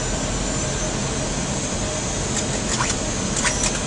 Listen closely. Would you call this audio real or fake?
real